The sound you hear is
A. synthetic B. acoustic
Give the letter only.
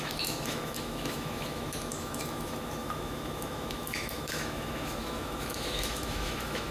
A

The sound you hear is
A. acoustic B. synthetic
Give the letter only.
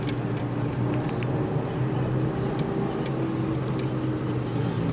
A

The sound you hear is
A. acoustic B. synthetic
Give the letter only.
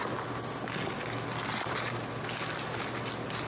A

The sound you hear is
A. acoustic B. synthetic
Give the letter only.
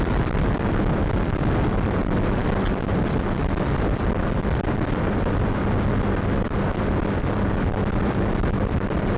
A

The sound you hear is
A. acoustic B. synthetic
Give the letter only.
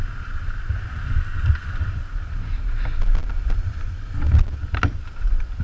A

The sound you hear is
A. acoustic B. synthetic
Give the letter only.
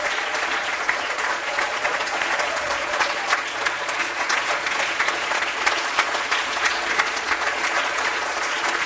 B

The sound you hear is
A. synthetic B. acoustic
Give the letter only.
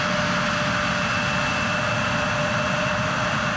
B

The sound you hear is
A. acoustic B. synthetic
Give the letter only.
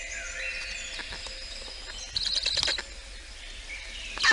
A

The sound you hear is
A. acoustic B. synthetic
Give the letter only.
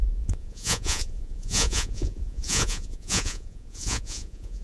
B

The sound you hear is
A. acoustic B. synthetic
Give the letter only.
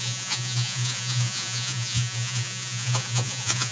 B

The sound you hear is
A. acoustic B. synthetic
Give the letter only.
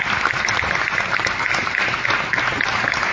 A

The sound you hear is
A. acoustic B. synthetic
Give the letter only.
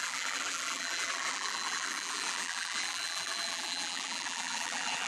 B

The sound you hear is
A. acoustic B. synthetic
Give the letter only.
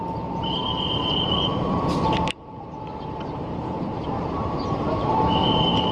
B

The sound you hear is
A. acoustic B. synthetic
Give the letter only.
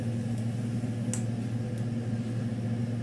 A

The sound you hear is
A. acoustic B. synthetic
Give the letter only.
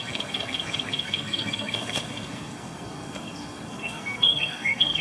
B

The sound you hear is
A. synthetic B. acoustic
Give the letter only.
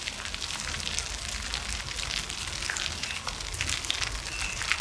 B